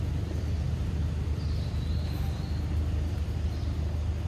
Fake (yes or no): no